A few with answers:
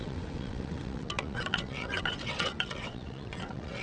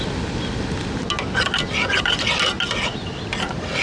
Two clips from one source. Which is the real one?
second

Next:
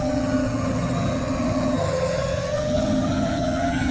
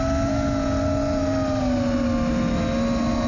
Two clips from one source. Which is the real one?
second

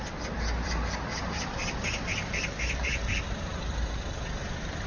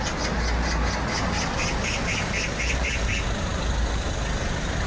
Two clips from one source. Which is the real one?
second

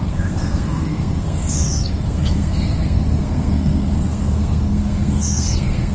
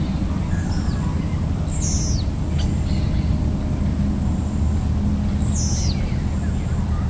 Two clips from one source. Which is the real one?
second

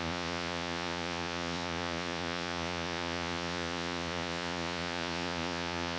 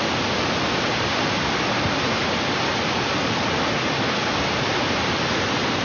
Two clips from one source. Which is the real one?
second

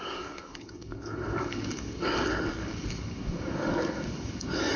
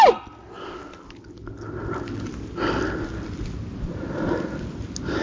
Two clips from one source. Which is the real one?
second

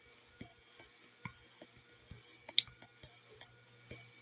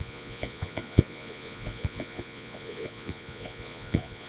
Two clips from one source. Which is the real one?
first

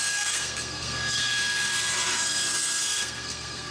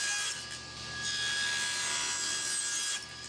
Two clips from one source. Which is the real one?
second